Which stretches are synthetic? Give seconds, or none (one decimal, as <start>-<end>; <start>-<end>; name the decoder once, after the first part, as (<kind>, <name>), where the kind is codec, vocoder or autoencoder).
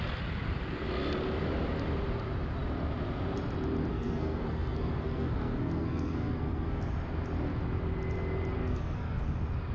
3.9-6.8 (codec, SNAC); 8.6-9.2